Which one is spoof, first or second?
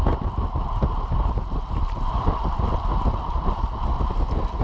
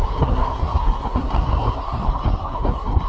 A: second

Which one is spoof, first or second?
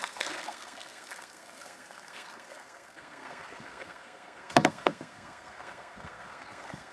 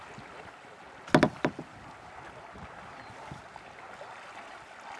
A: first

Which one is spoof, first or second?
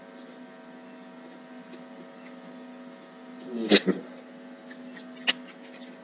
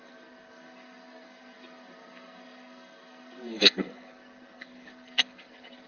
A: second